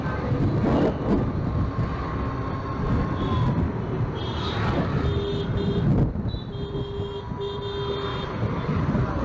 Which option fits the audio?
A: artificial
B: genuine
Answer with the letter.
B